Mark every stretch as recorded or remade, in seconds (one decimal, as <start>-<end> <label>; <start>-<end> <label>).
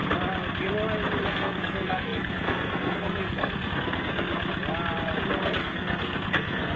0.0-1.3 recorded; 1.3-4.3 remade; 4.3-5.6 recorded; 5.6-6.8 remade